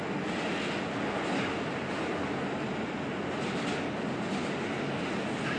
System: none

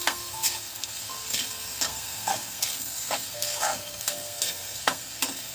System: codec, SNAC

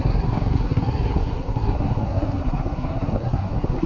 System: codec, SNAC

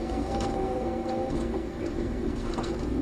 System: codec, SNAC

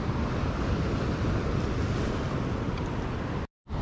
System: none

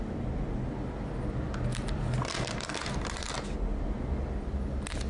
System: none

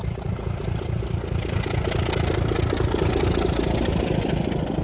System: none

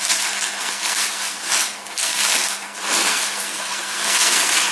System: codec, SNAC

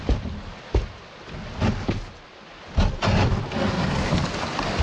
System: none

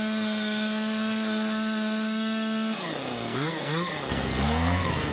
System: codec, SNAC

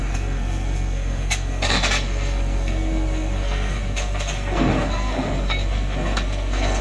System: codec, SNAC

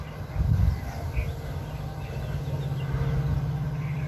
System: none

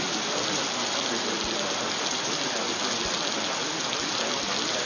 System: none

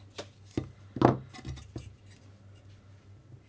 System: none